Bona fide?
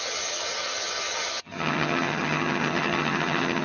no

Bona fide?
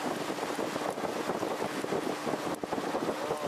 yes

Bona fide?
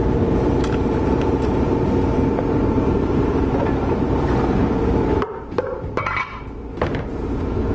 no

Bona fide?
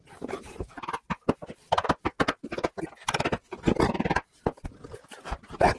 yes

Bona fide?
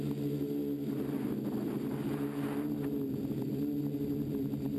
yes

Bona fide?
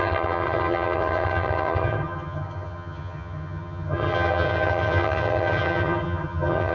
no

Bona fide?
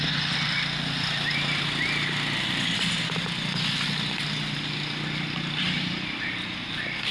yes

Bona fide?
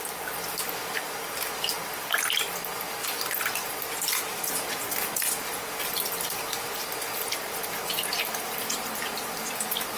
yes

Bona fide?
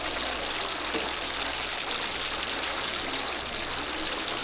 yes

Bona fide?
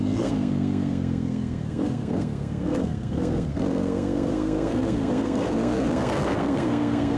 no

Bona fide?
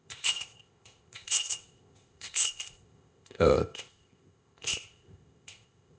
no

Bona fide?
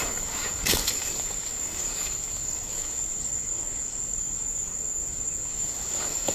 no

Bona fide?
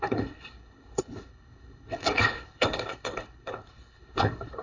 no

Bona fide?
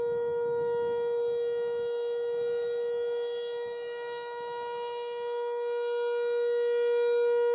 yes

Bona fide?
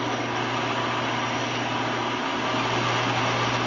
yes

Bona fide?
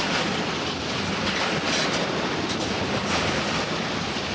no